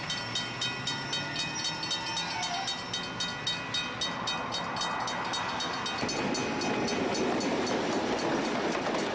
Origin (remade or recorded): recorded